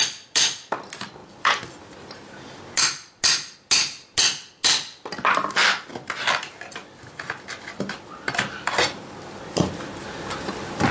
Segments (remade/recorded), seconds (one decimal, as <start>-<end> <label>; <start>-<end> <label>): 0.0-10.9 recorded